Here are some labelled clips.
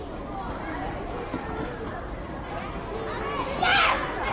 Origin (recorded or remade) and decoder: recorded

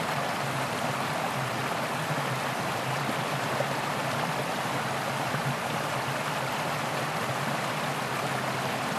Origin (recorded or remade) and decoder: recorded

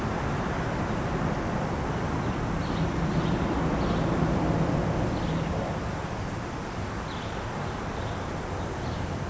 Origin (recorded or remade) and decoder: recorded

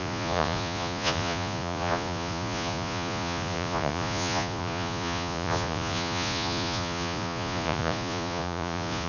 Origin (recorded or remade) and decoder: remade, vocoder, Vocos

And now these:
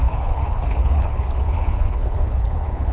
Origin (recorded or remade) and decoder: remade, codec, HILCodec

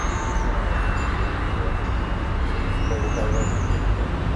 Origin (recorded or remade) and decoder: recorded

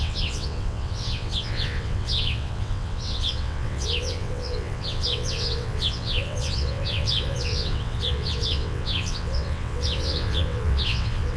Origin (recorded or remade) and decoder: remade, vocoder, WaveNeXt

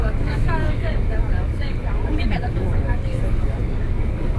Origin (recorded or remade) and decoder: remade, codec, DAC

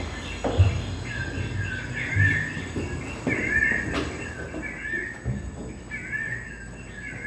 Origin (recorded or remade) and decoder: recorded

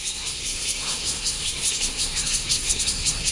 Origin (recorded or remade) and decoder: remade, codec, SNAC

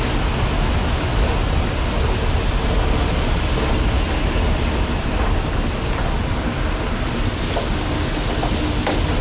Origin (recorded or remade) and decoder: recorded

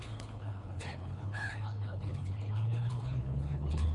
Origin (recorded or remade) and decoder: remade, codec, HILCodec